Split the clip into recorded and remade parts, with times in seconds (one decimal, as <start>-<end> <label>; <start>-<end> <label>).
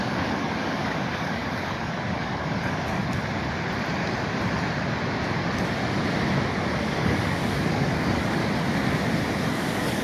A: 0.0-3.0 remade; 3.0-6.5 recorded; 6.5-8.4 remade; 8.4-9.5 recorded; 9.5-10.0 remade